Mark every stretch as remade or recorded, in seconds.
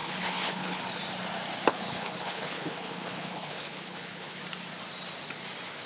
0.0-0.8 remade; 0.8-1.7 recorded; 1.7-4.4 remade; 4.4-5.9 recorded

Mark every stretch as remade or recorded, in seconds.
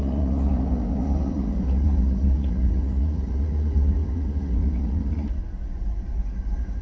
0.0-5.4 remade; 5.4-6.8 recorded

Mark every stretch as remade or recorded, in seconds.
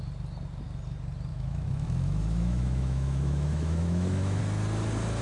0.0-1.3 recorded; 1.3-4.4 remade; 4.4-5.2 recorded